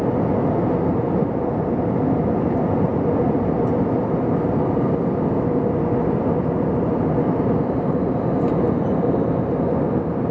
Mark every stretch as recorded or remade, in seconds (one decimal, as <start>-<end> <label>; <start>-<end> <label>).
0.0-10.3 recorded